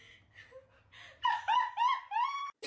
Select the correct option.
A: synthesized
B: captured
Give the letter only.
B